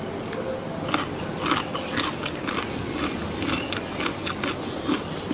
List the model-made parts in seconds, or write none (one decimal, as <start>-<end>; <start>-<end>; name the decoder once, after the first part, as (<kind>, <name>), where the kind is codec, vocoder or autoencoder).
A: none